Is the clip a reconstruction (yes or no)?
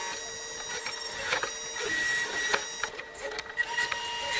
no